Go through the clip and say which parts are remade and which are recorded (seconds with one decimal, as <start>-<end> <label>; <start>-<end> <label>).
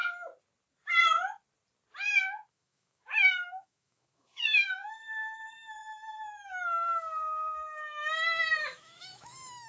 0.0-2.5 recorded; 2.5-9.7 remade